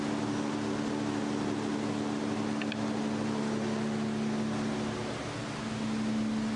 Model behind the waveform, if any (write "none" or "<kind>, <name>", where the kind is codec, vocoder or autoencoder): none